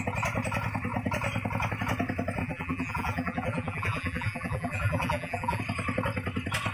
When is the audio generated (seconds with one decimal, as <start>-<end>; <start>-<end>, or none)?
2.4-5.6